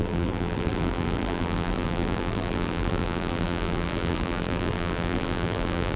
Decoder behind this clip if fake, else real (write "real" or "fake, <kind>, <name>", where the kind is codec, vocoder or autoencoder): fake, vocoder, BigVGAN v2